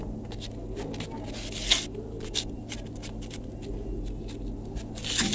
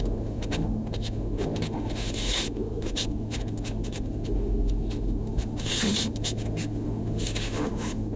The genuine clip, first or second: first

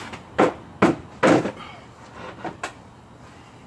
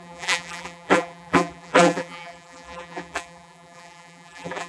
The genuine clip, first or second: first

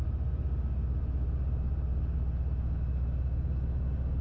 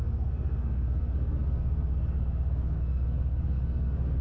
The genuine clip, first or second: first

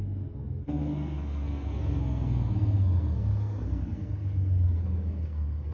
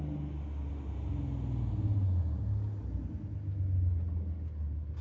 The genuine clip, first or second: second